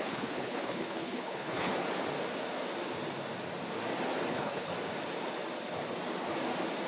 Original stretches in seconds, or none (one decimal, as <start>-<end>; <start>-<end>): 1.7-4.3; 4.7-6.9